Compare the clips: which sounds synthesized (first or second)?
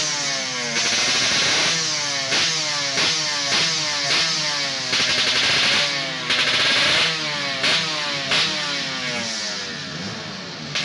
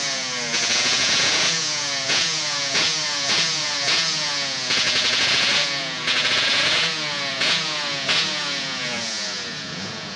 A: second